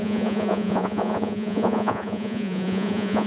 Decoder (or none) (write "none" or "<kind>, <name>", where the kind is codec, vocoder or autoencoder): vocoder, Vocos